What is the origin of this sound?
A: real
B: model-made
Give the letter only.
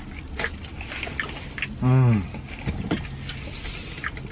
A